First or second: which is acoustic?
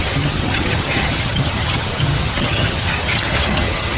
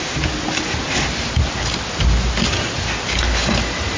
second